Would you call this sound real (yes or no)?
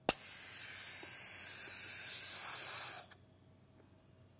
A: yes